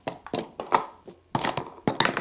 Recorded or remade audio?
recorded